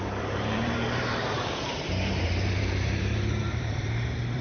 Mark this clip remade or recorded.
remade